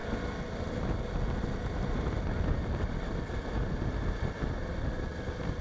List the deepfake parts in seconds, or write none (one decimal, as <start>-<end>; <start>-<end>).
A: none